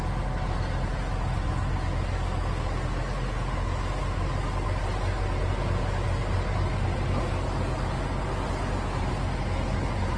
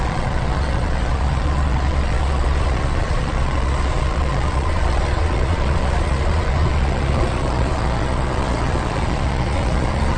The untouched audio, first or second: first